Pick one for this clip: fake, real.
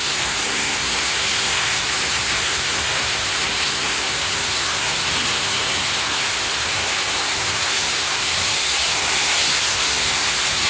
fake